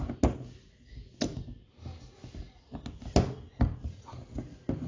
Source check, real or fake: real